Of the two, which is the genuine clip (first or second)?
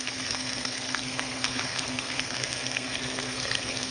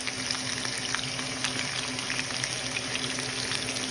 second